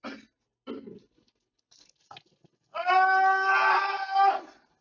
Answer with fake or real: real